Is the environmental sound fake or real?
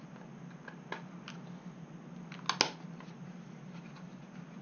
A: real